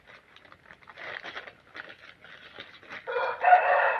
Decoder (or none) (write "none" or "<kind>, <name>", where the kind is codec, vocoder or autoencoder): none